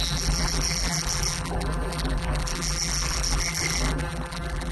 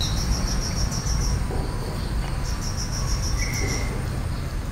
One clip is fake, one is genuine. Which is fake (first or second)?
first